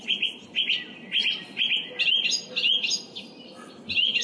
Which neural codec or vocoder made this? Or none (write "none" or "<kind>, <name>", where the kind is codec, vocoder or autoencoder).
none